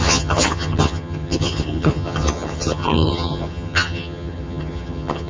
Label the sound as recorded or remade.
remade